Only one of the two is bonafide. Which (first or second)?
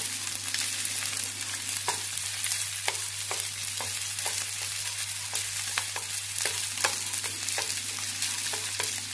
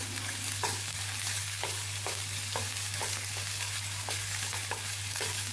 first